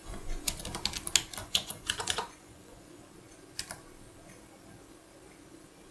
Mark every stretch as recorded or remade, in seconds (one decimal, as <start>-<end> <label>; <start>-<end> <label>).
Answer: 0.0-0.6 remade; 0.6-1.4 recorded; 1.4-3.0 remade; 3.0-5.9 recorded